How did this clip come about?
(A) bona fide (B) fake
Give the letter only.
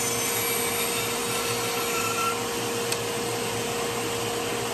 A